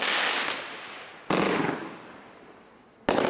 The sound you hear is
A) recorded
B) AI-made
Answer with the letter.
A